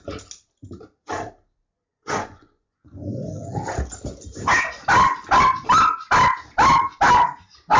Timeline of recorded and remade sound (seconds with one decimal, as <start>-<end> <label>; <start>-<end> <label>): 0.0-1.9 recorded; 1.9-3.3 remade; 3.3-7.8 recorded